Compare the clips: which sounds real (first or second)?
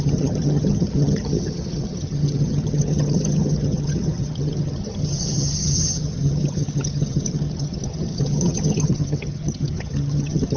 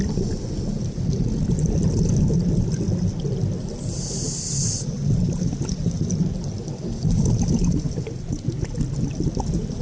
second